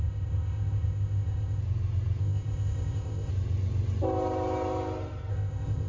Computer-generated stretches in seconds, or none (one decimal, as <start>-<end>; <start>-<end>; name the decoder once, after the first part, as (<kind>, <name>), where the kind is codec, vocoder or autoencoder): 0.0-1.6 (codec, ZipCodec); 2.2-3.3; 5.3-5.9